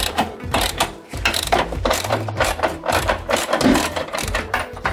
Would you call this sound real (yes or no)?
no